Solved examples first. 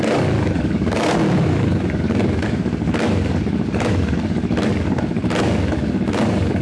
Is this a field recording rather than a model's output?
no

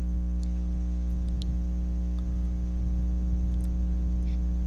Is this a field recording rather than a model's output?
yes